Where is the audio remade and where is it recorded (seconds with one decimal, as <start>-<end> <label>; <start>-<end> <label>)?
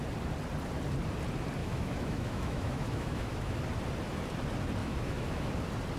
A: 0.0-1.6 recorded; 1.6-3.6 remade; 3.6-4.8 recorded; 4.8-5.5 remade; 5.5-6.0 recorded